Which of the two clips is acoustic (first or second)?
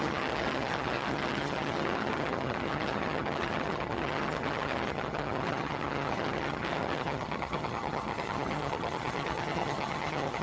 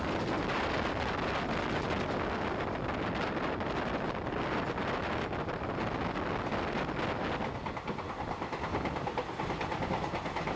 second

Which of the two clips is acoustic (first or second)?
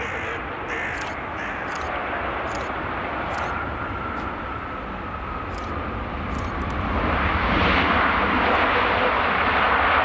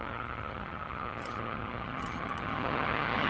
first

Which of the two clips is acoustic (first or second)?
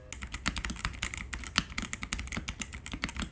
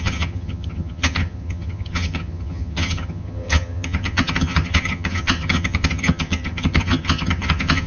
first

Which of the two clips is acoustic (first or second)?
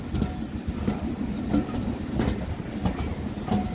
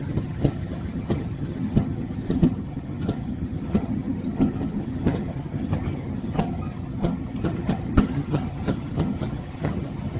first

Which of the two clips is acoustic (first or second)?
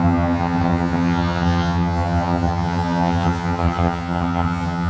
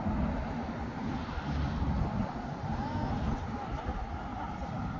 second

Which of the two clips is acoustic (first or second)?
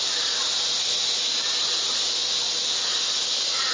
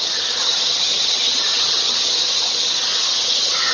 first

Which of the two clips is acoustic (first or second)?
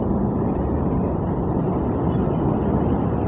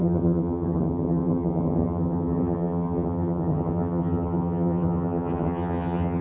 first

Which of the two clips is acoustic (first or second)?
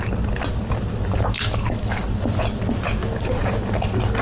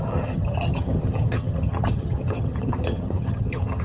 first